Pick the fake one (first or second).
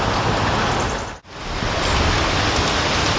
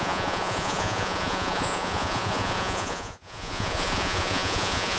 second